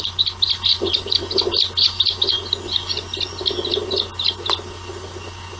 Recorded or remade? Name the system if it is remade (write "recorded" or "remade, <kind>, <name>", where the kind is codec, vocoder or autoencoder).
recorded